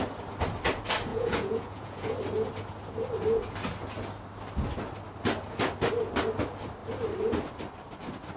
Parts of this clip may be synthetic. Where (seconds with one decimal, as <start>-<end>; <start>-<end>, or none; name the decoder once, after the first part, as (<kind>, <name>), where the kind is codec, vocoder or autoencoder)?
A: 1.1-2.2 (vocoder, Vocos)